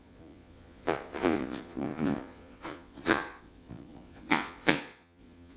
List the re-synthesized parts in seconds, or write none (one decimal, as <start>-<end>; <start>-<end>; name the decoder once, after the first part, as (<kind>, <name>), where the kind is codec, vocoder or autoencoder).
0.0-5.6 (vocoder, Vocos)